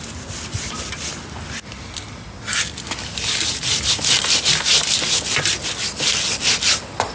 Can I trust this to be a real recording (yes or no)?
yes